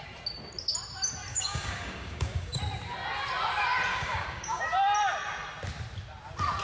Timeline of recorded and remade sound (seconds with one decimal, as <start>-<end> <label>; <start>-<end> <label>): 0.0-1.3 recorded; 1.3-2.6 remade; 2.6-3.9 recorded; 3.9-4.6 remade; 4.6-6.6 recorded